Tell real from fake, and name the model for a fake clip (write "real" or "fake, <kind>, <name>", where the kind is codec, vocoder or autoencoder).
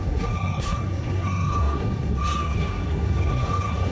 fake, codec, SNAC